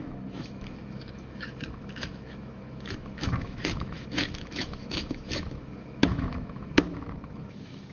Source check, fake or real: fake